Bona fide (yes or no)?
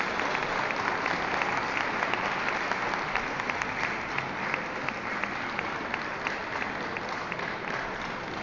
yes